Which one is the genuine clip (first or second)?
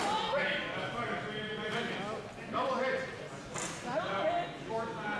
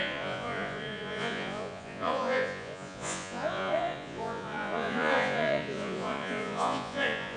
first